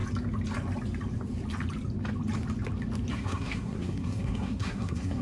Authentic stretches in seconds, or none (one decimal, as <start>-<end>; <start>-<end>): 0.0-3.1